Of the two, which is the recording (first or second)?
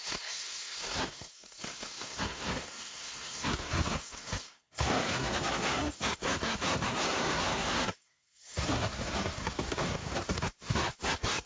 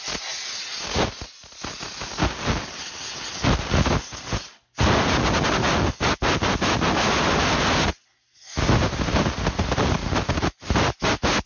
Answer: second